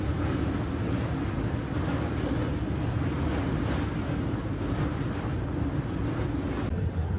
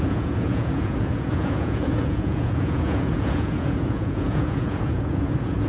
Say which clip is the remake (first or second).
second